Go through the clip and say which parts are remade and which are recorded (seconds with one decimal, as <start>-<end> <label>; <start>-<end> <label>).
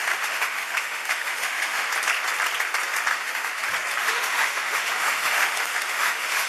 0.0-1.9 remade; 1.9-3.1 recorded; 3.1-3.6 remade; 3.6-4.0 recorded; 4.0-6.5 remade